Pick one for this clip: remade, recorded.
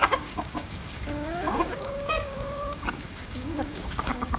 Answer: remade